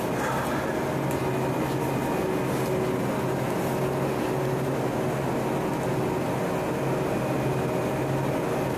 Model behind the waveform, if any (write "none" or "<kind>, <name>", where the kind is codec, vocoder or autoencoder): none